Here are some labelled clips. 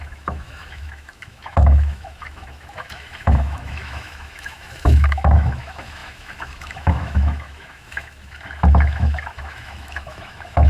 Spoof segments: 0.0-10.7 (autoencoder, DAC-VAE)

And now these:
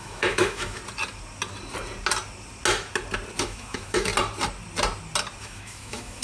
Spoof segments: 0.0-0.8 (autoencoder, DAC-VAE); 3.4-4.1; 5.4-6.2

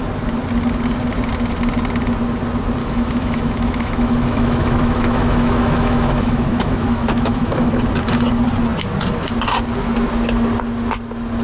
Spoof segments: 2.8-7.8 (autoencoder, DAC-VAE)

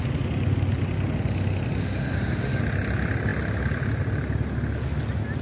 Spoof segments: 1.8-2.6 (autoencoder, DAC-VAE)

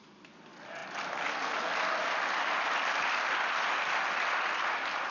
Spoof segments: none

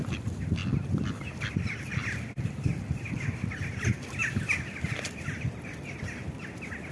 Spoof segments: none

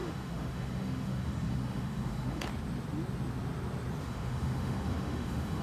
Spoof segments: 0.0-2.5 (autoencoder, DAC-VAE); 4.0-5.6

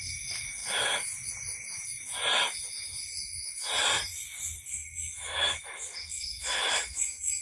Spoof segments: 4.8-5.7 (autoencoder, DAC-VAE); 6.3-7.4